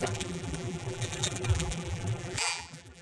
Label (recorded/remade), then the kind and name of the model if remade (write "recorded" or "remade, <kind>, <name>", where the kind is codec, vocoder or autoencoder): remade, vocoder, BigVGAN v2